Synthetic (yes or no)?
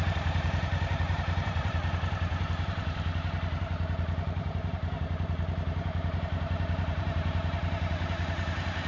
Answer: yes